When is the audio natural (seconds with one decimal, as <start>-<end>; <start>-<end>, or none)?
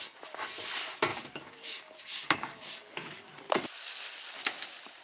0.0-1.1; 3.3-5.0